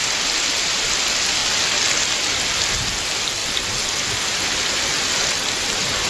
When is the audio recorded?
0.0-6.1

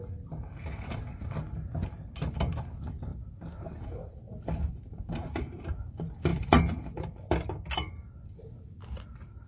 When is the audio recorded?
0.0-3.1; 5.3-6.3; 7.9-9.5